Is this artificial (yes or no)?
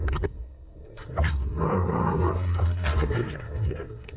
yes